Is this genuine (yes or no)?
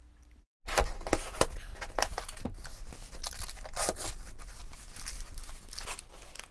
yes